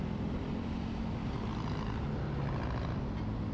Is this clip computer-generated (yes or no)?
no